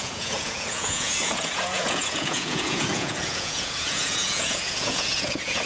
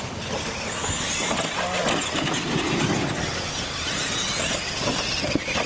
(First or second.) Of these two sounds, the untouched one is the second